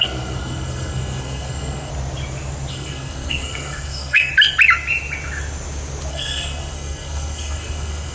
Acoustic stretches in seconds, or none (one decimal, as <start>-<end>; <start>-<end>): 1.9-2.7; 4.3-6.1